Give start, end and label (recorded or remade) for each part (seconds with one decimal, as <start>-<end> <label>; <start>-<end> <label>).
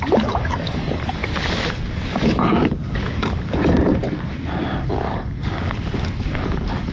0.0-1.2 remade; 1.2-1.7 recorded; 1.7-3.6 remade; 3.6-4.9 recorded; 4.9-6.9 remade